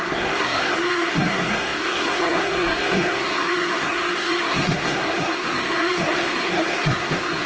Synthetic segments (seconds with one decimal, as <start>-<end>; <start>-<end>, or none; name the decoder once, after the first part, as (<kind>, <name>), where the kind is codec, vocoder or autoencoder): 0.0-7.5 (codec, SNAC)